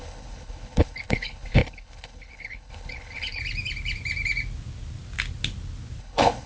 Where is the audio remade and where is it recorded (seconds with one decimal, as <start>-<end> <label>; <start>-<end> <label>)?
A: 0.0-3.4 remade; 3.4-6.0 recorded; 6.0-6.5 remade